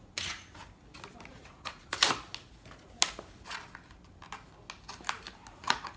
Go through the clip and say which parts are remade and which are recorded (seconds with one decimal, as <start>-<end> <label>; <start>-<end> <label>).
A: 0.0-0.6 remade; 0.6-1.3 recorded; 1.3-1.9 remade; 1.9-5.5 recorded; 5.5-6.0 remade